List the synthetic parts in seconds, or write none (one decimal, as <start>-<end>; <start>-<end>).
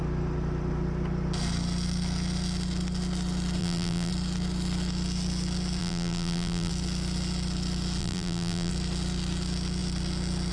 3.6-4.1; 5.8-6.7; 8.0-8.7